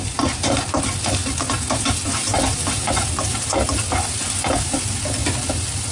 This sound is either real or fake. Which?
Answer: real